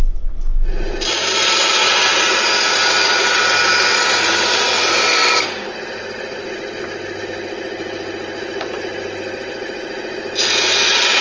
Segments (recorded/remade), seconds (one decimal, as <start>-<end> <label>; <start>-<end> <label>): 0.0-11.2 recorded